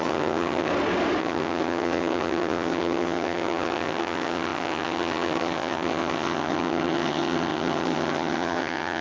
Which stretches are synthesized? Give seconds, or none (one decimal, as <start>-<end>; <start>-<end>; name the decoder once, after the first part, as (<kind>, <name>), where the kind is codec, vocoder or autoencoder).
0.0-0.7 (vocoder, HiFi-GAN); 1.2-9.0